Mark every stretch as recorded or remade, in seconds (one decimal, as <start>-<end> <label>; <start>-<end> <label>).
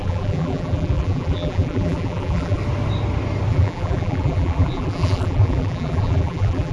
0.0-2.6 remade; 2.6-3.5 recorded; 3.5-6.7 remade